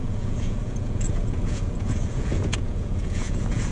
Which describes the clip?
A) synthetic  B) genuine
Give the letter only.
A